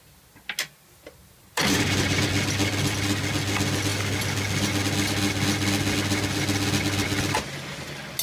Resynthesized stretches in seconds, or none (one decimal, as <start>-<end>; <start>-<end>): 1.2-2.3